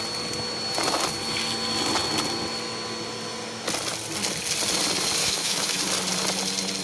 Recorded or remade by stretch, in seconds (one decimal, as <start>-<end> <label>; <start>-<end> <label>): 0.0-5.2 recorded; 5.2-5.8 remade; 5.8-6.8 recorded